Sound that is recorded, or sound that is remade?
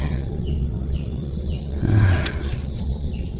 remade